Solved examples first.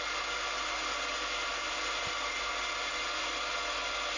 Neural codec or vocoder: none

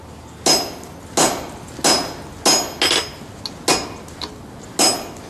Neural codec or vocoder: none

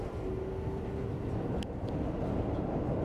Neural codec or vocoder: none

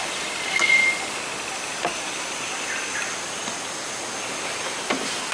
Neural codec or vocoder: none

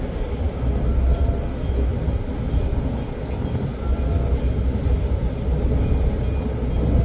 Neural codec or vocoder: none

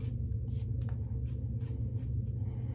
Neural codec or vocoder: none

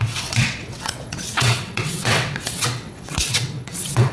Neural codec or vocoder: vocoder, WaveNeXt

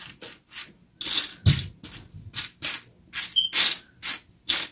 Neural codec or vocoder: none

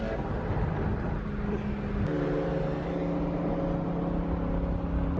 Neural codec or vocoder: none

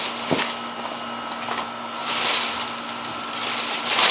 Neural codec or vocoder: none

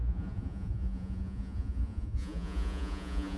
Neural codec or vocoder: vocoder, Vocos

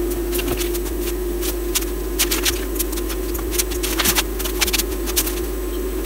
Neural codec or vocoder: none